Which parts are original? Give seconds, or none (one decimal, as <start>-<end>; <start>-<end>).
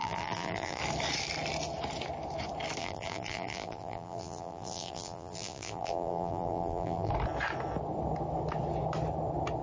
0.8-2.8; 7.1-9.6